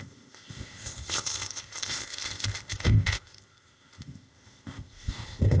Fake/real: fake